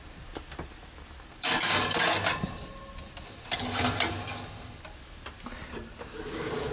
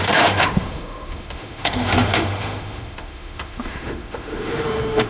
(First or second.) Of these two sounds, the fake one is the second